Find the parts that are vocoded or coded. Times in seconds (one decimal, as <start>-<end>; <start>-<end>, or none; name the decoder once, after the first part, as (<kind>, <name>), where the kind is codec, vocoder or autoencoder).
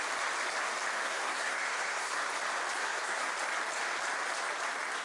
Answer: 1.0-2.3 (codec, SNAC); 2.8-3.3